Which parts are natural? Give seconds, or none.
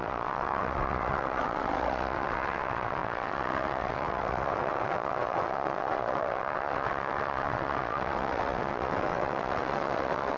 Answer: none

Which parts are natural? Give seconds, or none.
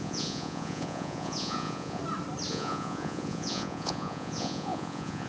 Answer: 2.0-2.5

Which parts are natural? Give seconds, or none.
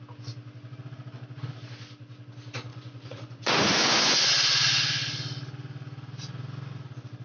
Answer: 0.0-2.7; 4.3-7.2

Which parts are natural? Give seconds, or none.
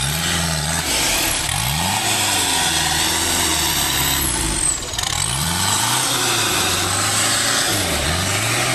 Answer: 0.0-3.5; 6.2-8.7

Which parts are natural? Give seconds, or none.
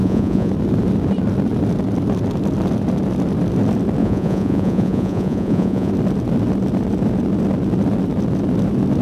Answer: 0.5-4.0; 5.9-9.0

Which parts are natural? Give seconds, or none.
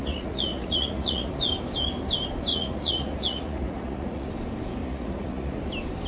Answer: 1.4-2.5; 4.3-4.8; 5.6-6.1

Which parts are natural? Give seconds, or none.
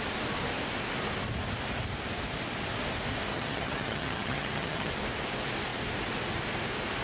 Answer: 0.0-3.3; 4.9-7.0